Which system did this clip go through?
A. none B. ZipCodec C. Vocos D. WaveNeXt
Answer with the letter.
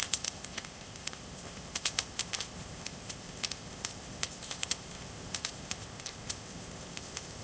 B